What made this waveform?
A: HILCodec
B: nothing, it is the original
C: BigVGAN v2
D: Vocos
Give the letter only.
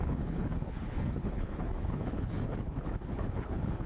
A